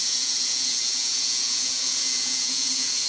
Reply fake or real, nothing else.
fake